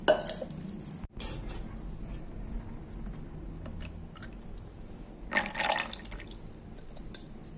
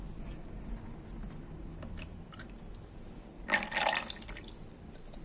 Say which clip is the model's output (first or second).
second